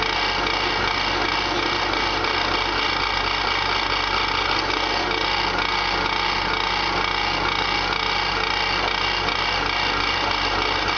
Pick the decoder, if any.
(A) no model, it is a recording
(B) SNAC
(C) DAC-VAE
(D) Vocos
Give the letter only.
A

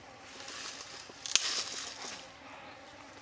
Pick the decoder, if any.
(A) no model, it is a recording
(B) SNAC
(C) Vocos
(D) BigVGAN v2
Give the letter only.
A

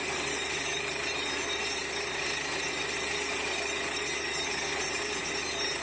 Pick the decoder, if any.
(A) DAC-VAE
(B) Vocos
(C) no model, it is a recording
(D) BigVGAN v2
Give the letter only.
C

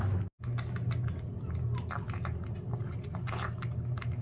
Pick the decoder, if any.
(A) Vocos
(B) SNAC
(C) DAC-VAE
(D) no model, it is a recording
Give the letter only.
D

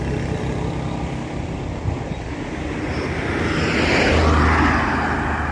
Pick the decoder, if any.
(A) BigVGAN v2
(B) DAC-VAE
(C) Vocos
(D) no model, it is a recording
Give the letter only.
D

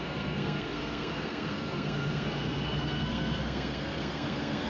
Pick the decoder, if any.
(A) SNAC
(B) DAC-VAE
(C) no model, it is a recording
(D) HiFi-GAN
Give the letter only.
A